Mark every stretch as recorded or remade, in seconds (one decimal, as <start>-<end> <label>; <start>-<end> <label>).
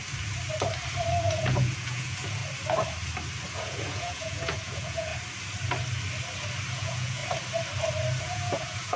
0.0-1.2 recorded; 1.2-2.4 remade; 2.4-3.5 recorded; 3.5-5.1 remade; 5.1-6.7 recorded; 6.7-7.2 remade; 7.2-8.2 recorded; 8.2-9.0 remade